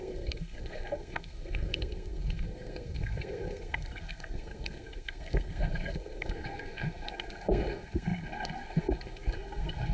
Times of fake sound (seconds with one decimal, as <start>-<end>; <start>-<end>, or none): 0.0-9.9